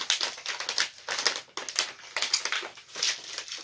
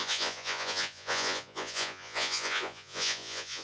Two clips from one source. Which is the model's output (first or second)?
second